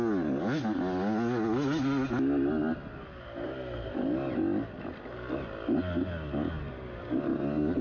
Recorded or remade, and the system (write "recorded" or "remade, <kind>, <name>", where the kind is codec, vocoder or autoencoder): recorded